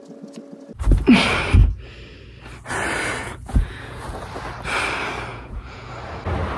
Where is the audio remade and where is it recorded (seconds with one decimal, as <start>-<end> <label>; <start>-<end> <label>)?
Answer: 0.0-3.2 recorded; 3.2-4.0 remade; 4.0-5.3 recorded; 5.3-5.9 remade; 5.9-6.6 recorded